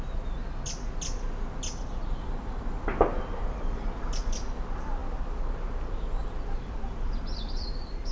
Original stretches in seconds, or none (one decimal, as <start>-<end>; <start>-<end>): 0.0-8.1